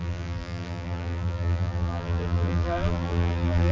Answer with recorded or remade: remade